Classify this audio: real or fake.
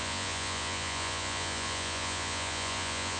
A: fake